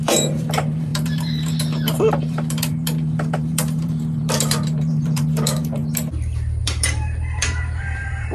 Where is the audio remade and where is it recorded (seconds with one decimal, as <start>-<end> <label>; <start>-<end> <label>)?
0.0-5.8 remade; 5.8-6.6 recorded; 6.6-8.3 remade